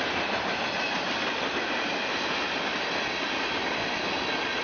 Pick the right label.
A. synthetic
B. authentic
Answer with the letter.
B